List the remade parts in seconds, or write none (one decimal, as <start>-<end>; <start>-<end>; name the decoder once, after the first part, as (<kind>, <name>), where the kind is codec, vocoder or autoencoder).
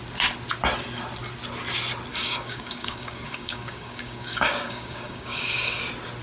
2.1-5.8 (codec, DAC)